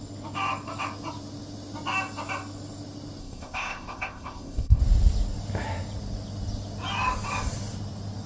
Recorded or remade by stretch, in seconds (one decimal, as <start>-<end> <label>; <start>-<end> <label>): 0.0-3.2 recorded; 3.2-4.8 remade; 4.8-8.3 recorded